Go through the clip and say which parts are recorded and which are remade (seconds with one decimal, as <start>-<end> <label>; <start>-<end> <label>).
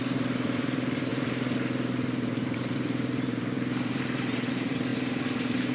0.0-5.7 remade